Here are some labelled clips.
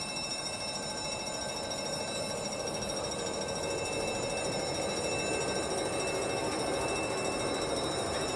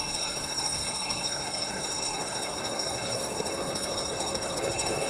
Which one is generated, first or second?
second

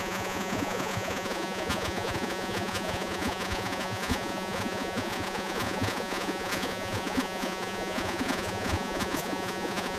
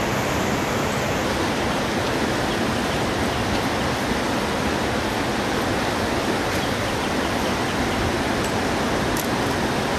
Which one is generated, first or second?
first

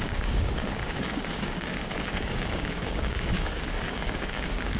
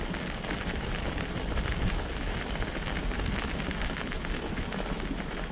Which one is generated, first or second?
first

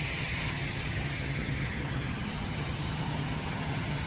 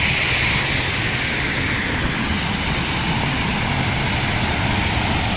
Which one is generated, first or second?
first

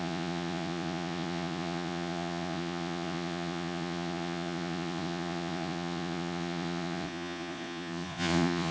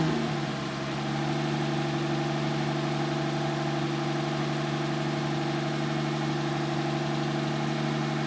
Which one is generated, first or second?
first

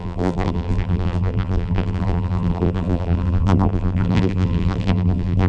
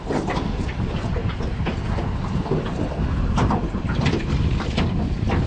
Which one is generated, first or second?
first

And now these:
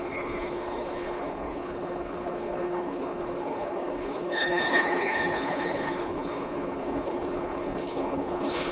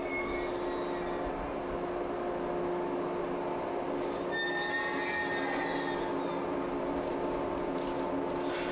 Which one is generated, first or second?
first